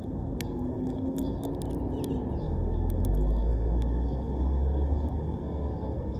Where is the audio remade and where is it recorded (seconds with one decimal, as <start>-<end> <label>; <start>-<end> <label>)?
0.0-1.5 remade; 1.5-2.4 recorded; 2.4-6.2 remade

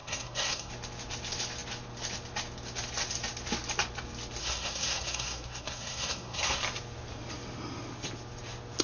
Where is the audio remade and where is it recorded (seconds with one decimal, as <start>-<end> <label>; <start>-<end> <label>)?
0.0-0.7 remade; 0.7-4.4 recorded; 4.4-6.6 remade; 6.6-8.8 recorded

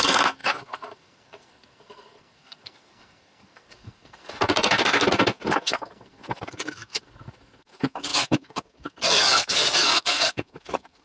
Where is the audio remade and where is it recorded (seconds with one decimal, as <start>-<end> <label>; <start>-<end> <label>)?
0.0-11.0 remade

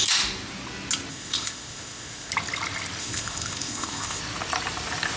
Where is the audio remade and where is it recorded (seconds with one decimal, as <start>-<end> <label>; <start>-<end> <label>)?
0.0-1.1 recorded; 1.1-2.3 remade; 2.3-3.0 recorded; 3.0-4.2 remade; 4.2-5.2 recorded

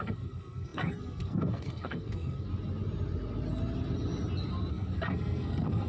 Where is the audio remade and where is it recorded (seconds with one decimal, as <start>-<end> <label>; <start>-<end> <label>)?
0.0-2.5 remade; 2.5-4.7 recorded; 4.7-5.9 remade

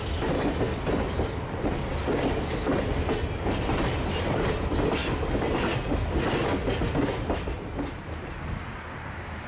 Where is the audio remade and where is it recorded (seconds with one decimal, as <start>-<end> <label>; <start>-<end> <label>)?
0.0-9.5 recorded

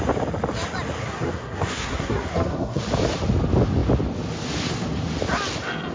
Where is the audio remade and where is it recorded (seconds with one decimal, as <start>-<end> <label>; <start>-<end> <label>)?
0.0-1.0 recorded; 1.0-2.8 remade; 2.8-5.9 recorded